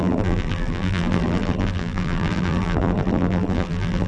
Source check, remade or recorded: remade